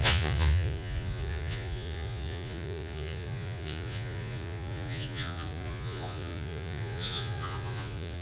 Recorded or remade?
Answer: remade